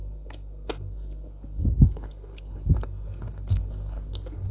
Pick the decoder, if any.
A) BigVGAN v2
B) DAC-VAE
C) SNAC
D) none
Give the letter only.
C